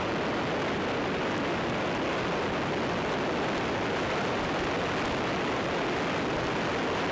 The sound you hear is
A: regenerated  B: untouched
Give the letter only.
B